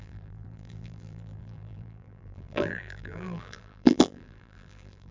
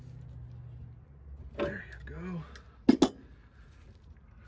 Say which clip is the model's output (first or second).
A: first